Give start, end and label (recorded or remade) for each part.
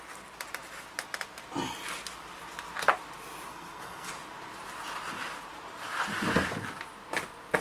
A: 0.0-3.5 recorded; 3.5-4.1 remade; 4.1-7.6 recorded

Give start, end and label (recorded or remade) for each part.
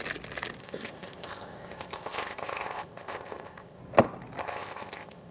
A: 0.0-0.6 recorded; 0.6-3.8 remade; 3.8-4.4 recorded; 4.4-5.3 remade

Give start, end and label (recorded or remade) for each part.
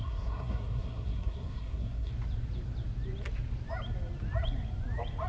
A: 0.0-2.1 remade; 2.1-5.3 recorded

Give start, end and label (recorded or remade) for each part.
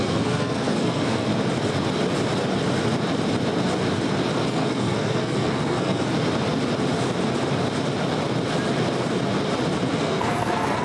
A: 0.0-1.3 remade; 1.3-4.5 recorded; 4.5-6.1 remade; 6.1-9.9 recorded; 9.9-10.8 remade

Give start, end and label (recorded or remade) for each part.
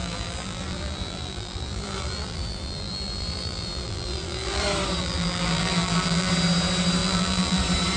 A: 0.0-4.6 remade; 4.6-5.0 recorded; 5.0-6.3 remade; 6.3-7.0 recorded; 7.0-7.6 remade; 7.6-8.0 recorded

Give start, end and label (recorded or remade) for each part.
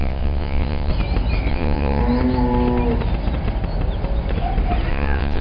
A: 0.0-0.9 remade; 0.9-1.5 recorded; 1.5-2.0 remade; 2.0-4.9 recorded; 4.9-5.4 remade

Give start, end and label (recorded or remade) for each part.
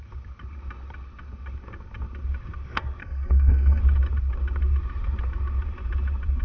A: 0.0-3.0 recorded; 3.0-3.8 remade; 3.8-6.4 recorded